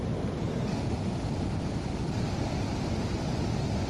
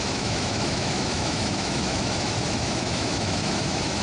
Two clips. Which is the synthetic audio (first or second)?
second